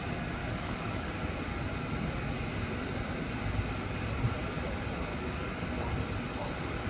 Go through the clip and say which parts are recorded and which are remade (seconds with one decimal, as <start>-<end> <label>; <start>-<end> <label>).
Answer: 0.0-0.4 recorded; 0.4-1.1 remade; 1.1-5.1 recorded; 5.1-5.7 remade; 5.7-6.9 recorded